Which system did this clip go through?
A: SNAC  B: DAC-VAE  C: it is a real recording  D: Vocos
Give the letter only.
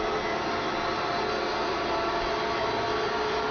C